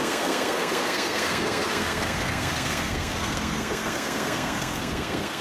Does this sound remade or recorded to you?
remade